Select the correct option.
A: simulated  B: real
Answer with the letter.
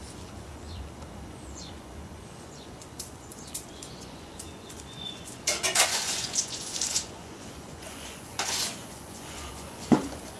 A